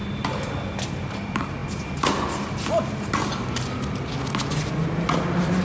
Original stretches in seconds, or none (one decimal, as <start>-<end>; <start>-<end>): 0.0-5.6